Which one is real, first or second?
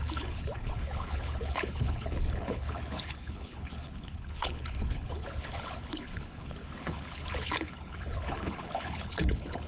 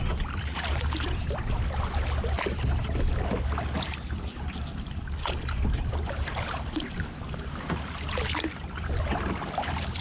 second